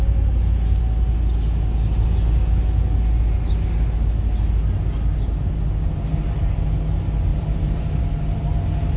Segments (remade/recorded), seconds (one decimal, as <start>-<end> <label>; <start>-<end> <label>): 0.0-7.3 recorded; 7.3-8.0 remade; 8.0-9.0 recorded